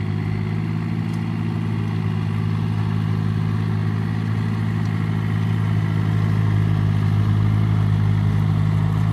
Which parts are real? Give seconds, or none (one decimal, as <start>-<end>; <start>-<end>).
0.0-9.1